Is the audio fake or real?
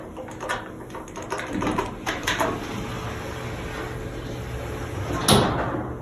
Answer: real